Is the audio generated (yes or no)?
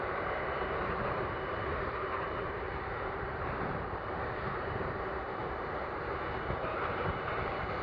yes